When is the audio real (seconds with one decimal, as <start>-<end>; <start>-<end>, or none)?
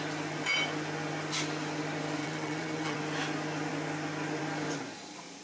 0.0-2.2; 3.0-5.4